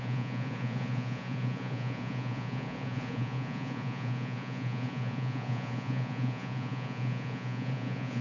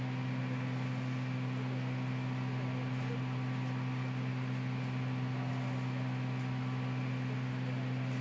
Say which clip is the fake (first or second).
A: first